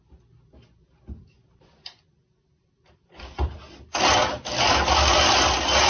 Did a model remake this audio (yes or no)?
no